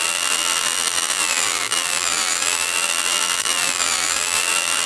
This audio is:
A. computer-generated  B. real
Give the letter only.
A